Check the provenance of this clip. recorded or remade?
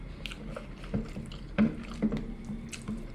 recorded